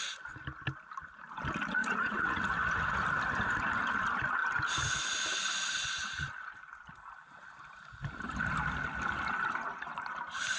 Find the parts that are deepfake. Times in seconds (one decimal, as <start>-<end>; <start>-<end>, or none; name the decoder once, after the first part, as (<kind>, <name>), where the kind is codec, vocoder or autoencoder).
1.8-2.5 (vocoder, Vocos)